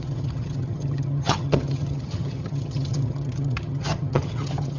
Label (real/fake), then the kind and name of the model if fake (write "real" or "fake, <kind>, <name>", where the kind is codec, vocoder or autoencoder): fake, vocoder, HiFi-GAN